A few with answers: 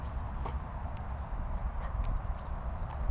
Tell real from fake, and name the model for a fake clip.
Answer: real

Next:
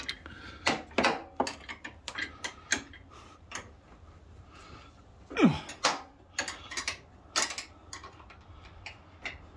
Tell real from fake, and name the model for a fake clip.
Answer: real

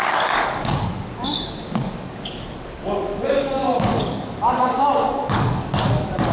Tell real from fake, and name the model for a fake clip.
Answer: fake, codec, DAC